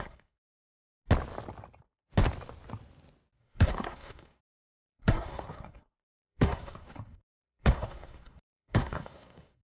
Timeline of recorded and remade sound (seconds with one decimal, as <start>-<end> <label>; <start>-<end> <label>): 0.0-0.8 remade; 0.8-3.4 recorded; 3.4-9.7 remade